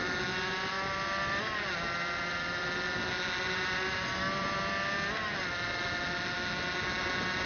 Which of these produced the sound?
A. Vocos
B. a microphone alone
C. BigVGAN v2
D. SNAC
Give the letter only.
B